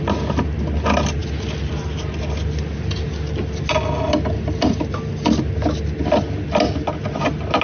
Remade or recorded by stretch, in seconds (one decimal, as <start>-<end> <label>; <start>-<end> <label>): 0.0-7.6 recorded